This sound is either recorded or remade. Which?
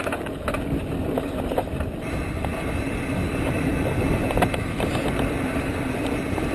recorded